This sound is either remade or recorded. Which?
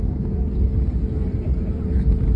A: remade